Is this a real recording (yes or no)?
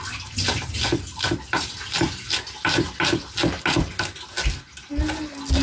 yes